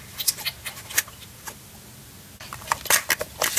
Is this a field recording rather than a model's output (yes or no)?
yes